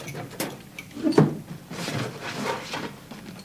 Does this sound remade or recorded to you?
recorded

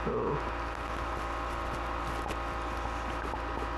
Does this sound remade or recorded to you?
recorded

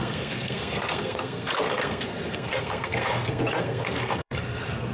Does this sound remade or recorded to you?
remade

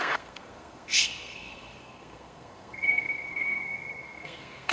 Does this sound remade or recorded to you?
remade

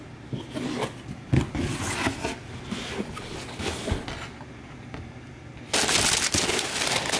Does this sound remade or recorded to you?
recorded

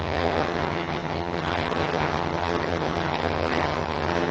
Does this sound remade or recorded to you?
remade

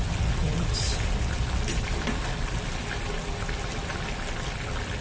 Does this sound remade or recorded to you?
recorded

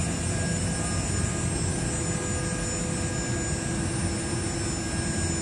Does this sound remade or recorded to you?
recorded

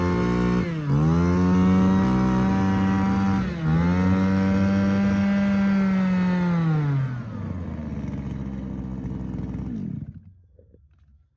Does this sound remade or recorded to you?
recorded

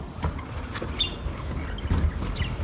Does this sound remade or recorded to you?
recorded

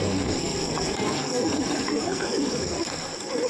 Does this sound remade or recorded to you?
remade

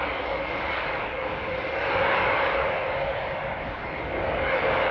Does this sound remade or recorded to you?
remade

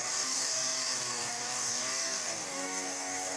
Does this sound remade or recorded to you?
remade